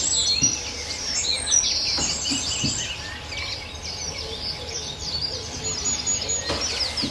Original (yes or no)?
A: yes